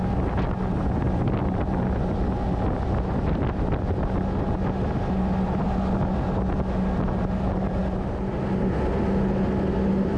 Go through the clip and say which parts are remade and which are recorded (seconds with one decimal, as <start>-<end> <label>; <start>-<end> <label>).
0.0-10.2 recorded